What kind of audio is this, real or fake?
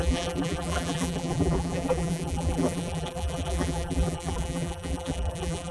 fake